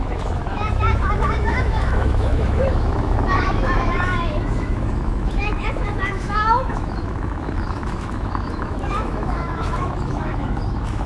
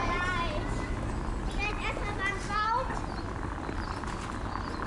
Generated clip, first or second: first